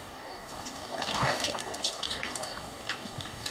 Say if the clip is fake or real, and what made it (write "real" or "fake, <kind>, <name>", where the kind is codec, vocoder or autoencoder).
fake, codec, DAC